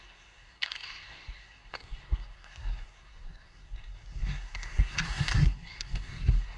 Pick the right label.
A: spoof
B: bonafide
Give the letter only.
A